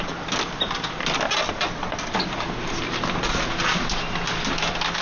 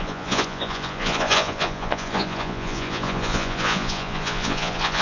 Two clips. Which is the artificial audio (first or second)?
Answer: second